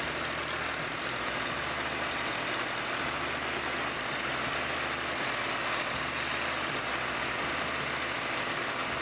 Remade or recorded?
recorded